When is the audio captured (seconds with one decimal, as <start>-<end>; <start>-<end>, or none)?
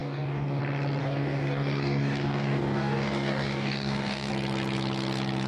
0.6-1.0; 4.3-5.5